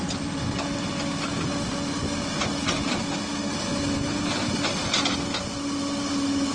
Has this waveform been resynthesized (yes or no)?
no